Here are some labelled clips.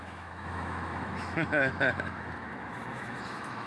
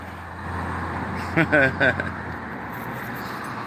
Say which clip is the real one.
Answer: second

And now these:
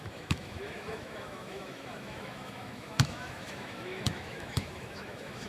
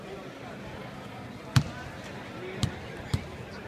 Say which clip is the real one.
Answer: second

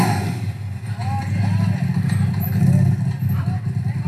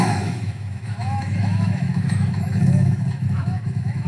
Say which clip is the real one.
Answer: first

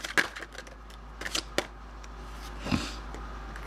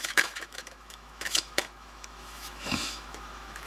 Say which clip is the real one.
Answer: first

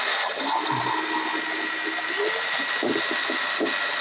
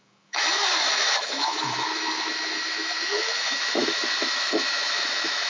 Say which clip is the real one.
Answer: first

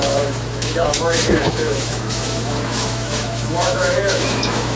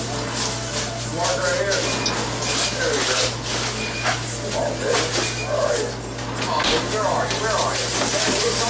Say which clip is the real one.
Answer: second